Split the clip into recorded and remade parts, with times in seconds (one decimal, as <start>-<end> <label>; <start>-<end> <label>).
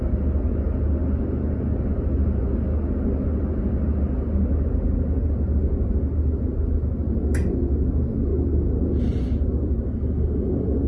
0.0-10.9 recorded